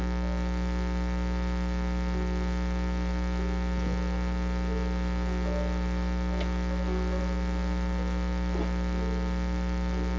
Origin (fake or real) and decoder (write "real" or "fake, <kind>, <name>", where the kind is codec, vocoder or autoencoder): real